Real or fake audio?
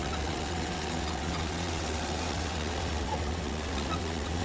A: fake